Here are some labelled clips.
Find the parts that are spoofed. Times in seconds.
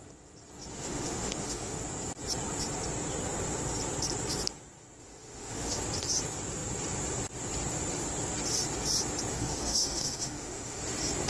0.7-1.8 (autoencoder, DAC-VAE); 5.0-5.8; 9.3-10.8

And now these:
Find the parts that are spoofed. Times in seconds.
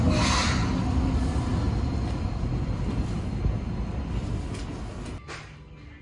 none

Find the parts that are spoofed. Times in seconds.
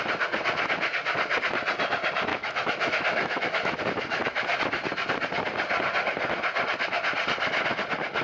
2.3-3.8 (autoencoder, DAC-VAE)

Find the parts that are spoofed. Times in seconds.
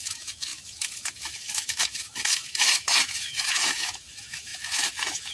0.0-5.3 (autoencoder, DAC-VAE)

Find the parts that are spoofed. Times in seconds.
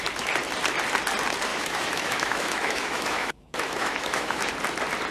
1.5-4.5 (autoencoder, DAC-VAE)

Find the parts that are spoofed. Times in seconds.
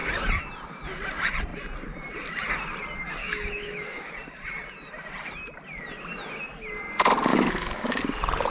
3.2-4.0 (autoencoder, DAC-VAE); 7.3-8.0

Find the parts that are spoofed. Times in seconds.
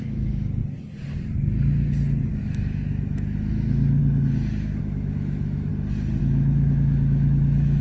0.0-0.6 (autoencoder, DAC-VAE); 2.3-4.0; 4.8-5.7; 6.2-7.8